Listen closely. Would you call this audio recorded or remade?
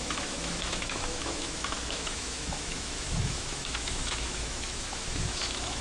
remade